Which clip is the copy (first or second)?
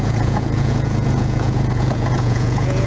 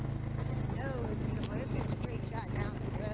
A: first